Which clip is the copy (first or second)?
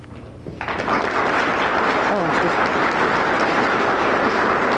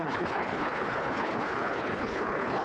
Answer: second